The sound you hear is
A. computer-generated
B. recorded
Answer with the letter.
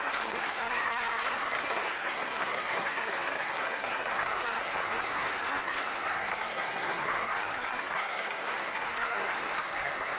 A